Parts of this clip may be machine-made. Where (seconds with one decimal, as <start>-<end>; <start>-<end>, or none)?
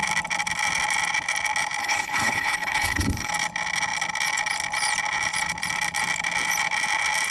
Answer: 1.8-3.3